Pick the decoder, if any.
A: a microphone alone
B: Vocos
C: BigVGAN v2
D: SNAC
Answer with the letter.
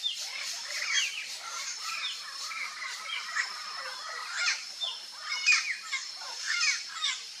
A